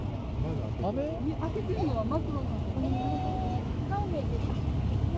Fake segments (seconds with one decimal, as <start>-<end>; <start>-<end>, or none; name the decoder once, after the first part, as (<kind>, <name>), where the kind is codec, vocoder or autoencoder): 3.6-4.2 (autoencoder, DAC-VAE)